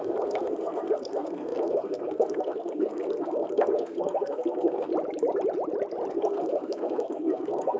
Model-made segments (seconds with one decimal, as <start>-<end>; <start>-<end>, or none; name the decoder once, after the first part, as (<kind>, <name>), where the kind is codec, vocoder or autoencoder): 0.0-4.9 (codec, SNAC); 6.1-7.8